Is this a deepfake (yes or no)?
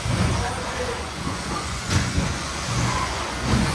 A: yes